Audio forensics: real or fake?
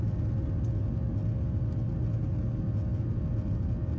real